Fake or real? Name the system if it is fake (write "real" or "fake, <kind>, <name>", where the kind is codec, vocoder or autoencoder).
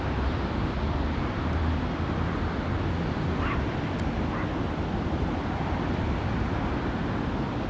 real